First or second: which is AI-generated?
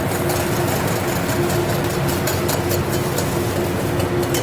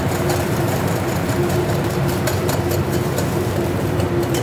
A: second